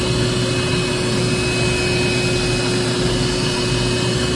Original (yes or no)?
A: yes